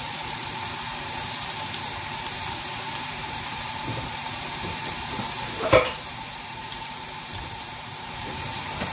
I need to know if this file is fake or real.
fake